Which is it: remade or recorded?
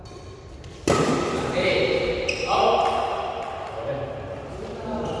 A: recorded